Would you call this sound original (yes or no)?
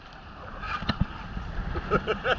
no